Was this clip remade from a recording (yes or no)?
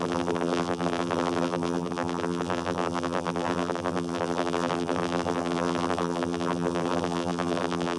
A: yes